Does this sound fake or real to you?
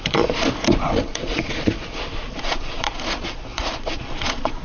fake